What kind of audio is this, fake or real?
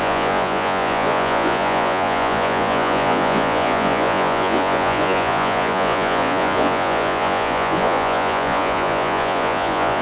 fake